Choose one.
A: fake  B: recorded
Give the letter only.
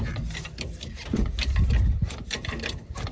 B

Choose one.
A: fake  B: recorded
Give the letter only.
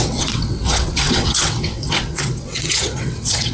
A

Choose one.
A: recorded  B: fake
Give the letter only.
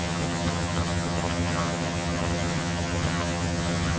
B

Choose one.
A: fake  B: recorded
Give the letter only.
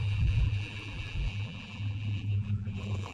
A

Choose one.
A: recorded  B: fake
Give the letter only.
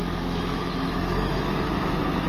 B